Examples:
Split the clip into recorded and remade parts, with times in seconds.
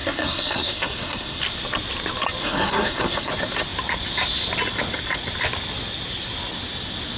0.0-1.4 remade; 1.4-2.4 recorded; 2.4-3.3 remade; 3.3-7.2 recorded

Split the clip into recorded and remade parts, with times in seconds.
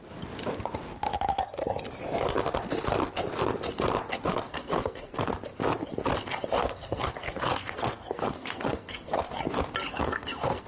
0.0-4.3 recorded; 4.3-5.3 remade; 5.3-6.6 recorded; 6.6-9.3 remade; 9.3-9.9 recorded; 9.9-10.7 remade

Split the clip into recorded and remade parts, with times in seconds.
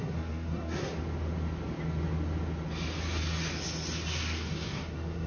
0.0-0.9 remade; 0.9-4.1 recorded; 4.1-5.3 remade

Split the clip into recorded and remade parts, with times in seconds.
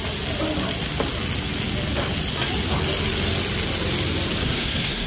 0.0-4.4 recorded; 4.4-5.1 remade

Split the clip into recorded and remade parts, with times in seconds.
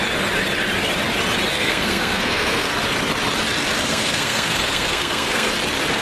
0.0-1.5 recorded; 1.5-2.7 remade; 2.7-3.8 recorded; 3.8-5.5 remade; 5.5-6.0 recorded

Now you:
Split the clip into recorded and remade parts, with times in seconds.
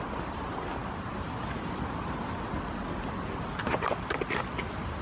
0.0-5.0 recorded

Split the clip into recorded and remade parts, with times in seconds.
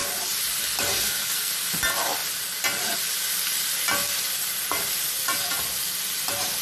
0.0-0.9 recorded; 0.9-1.5 remade; 1.5-6.6 recorded